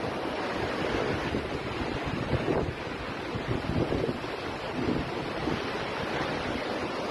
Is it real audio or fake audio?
real